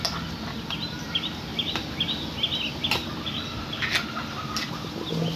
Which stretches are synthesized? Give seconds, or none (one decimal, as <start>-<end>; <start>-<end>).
none